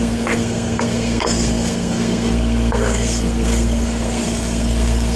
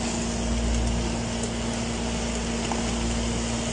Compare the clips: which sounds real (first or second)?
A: second